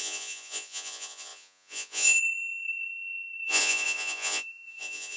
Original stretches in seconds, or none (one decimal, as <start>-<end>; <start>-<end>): none